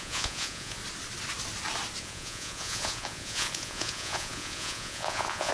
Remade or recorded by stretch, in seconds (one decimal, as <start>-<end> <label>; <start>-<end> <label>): 0.0-0.8 remade; 0.8-2.0 recorded; 2.0-5.5 remade